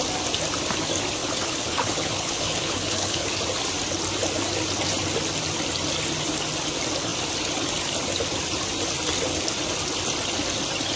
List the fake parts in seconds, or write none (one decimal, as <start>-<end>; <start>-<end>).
1.2-3.3